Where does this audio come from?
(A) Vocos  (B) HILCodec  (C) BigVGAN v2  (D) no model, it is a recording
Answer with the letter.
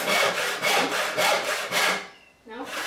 C